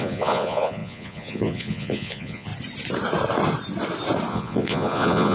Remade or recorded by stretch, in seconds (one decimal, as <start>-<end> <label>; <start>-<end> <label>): 0.0-2.5 remade; 2.5-4.3 recorded; 4.3-5.3 remade